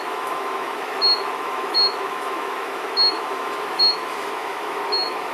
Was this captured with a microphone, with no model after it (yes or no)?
no